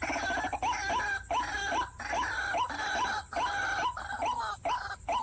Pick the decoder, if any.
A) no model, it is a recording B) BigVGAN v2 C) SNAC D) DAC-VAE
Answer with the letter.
A